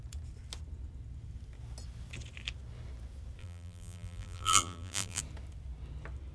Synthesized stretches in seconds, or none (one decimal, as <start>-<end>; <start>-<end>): 3.4-5.2